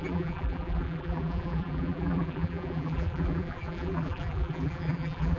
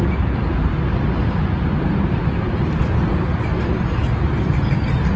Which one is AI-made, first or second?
first